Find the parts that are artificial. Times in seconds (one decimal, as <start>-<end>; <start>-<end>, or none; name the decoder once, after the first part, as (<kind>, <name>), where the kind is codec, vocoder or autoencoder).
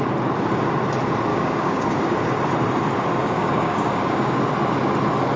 1.3-2.3 (codec, DAC); 3.2-4.5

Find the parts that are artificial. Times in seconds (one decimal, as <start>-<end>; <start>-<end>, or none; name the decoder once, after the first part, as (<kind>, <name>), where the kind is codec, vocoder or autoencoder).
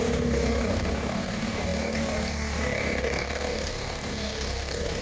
0.0-5.0 (codec, DAC)